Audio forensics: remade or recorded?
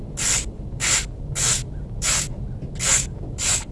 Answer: recorded